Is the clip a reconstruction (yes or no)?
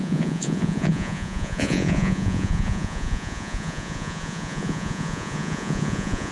yes